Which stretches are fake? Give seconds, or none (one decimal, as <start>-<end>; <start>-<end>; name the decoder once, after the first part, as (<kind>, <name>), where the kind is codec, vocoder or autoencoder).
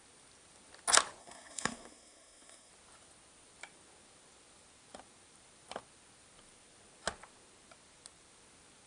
1.2-2.7 (codec, SNAC)